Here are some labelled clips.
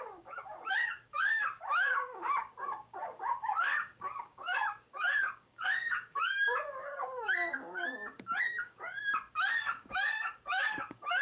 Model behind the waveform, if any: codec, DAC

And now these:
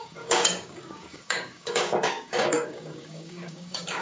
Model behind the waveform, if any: codec, DAC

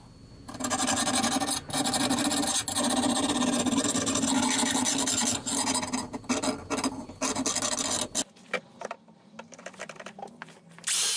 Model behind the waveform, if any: none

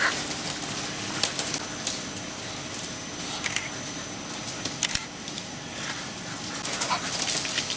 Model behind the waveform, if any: none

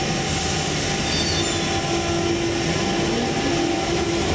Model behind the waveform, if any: none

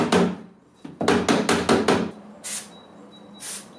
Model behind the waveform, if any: none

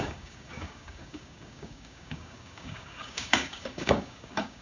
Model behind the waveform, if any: codec, DAC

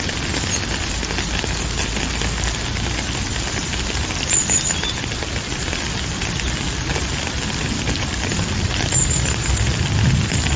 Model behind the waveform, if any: none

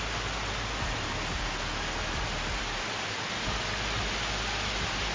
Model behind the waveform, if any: none